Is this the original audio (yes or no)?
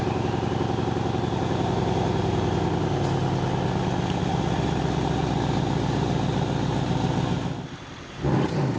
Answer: yes